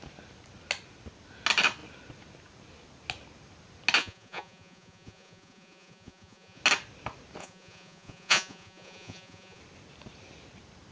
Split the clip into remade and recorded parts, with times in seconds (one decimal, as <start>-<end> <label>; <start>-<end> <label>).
0.0-4.0 recorded; 4.0-6.6 remade; 6.6-7.4 recorded; 7.4-9.6 remade; 9.6-10.9 recorded